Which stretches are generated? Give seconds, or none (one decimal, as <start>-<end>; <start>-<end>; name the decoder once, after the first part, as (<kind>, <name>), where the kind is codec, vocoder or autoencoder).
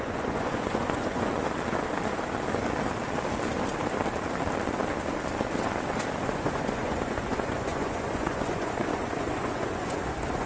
0.0-1.3 (vocoder, Vocos); 6.2-10.5